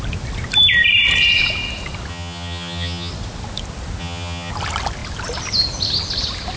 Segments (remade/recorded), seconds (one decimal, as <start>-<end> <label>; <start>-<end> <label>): 0.0-2.1 recorded; 2.1-3.1 remade; 3.1-4.0 recorded; 4.0-4.5 remade; 4.5-6.6 recorded